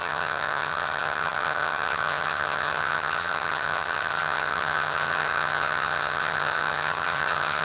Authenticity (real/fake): fake